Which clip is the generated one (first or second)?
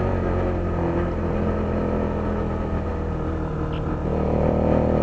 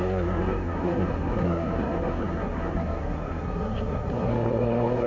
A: second